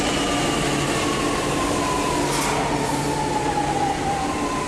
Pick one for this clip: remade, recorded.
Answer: recorded